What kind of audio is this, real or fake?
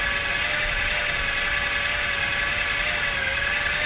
real